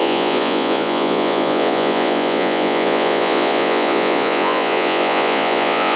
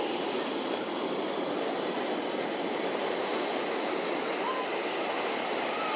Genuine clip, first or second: second